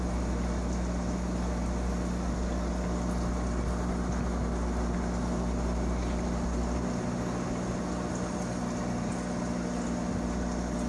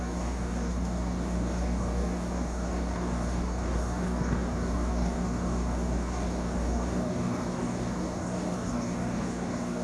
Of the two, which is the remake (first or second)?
second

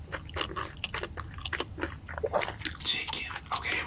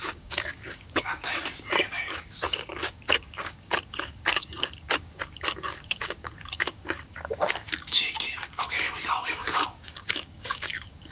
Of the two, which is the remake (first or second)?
second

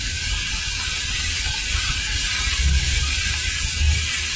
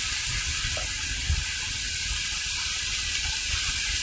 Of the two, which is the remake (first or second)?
first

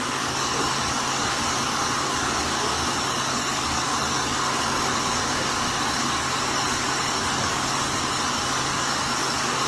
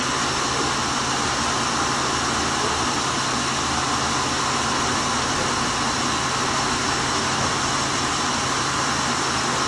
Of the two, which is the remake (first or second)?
first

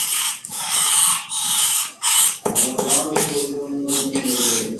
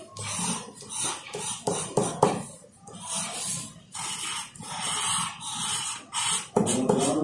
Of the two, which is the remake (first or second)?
first